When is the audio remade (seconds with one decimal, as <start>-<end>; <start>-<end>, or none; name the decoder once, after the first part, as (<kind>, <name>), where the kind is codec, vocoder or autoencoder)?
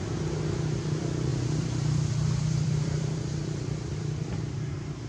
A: 1.3-4.4 (vocoder, BigVGAN v2)